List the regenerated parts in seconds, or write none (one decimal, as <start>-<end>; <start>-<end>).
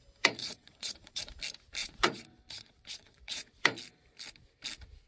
0.4-1.3; 1.8-3.5